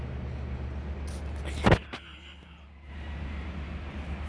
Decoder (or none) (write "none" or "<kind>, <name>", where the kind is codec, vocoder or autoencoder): none